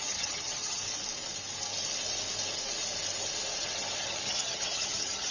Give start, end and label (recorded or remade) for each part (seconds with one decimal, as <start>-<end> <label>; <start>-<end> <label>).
0.0-0.8 remade; 0.8-4.0 recorded; 4.0-5.3 remade